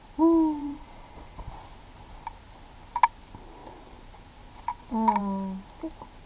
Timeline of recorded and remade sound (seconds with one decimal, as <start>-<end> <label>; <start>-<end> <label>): 0.0-0.6 recorded; 0.6-1.5 remade; 1.5-6.3 recorded